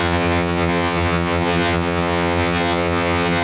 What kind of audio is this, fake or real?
fake